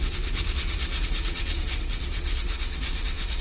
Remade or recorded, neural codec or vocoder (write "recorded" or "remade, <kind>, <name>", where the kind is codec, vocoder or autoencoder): remade, vocoder, WaveNeXt